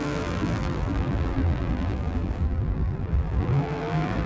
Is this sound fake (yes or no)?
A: yes